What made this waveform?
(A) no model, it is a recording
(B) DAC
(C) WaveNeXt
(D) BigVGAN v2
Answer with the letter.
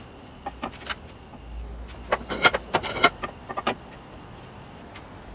A